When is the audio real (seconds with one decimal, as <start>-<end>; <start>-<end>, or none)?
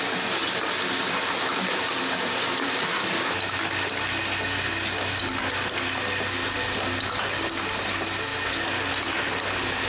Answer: 0.0-9.9